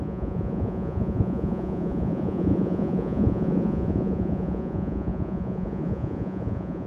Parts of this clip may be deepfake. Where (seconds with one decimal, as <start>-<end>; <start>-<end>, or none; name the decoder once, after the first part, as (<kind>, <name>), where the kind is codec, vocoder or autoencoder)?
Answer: 0.0-6.9 (vocoder, Vocos)